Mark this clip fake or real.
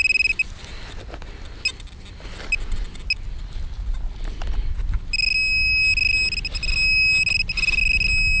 real